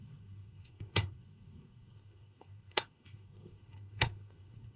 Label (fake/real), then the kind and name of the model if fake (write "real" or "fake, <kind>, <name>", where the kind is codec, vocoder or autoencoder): fake, codec, SNAC